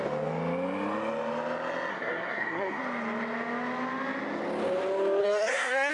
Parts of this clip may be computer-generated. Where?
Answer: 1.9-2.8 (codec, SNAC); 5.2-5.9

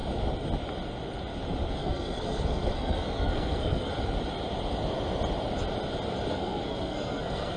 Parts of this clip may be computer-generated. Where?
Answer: 1.8-3.9 (codec, SNAC); 6.3-7.6